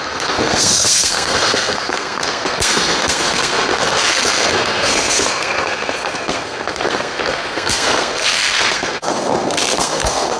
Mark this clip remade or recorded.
remade